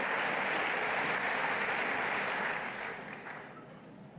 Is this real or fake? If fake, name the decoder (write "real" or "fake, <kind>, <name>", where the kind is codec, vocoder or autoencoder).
real